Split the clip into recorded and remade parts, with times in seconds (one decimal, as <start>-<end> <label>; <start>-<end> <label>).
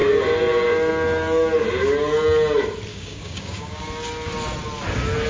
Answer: 0.0-2.9 recorded; 2.9-3.8 remade; 3.8-5.3 recorded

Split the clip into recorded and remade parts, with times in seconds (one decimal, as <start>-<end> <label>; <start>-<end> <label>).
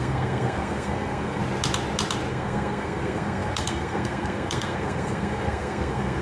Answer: 0.0-1.4 remade; 1.4-2.3 recorded; 2.3-6.2 remade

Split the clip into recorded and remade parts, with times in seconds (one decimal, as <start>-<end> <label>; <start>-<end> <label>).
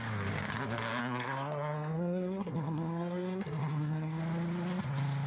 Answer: 0.0-1.0 recorded; 1.0-4.2 remade; 4.2-5.3 recorded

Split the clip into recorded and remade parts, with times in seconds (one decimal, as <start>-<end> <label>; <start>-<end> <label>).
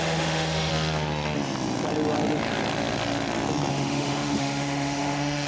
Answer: 0.0-0.7 remade; 0.7-3.7 recorded; 3.7-5.5 remade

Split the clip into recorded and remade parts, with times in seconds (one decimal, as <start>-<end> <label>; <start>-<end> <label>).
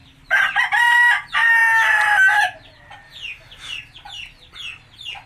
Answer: 0.0-5.3 recorded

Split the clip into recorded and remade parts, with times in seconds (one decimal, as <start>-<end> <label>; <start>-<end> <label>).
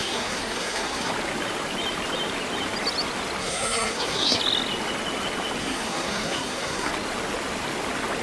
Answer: 0.0-1.1 remade; 1.1-3.4 recorded; 3.4-4.4 remade; 4.4-5.6 recorded; 5.6-6.9 remade; 6.9-8.2 recorded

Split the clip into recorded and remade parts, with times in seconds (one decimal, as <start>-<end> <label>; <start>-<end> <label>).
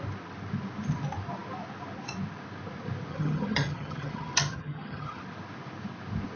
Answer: 0.0-3.1 recorded; 3.1-5.2 remade; 5.2-6.4 recorded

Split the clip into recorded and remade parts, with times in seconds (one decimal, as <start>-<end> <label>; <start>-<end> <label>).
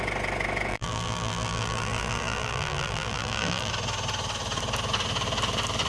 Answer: 0.0-0.7 recorded; 0.7-3.7 remade; 3.7-5.9 recorded